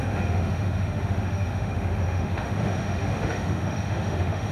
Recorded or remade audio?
remade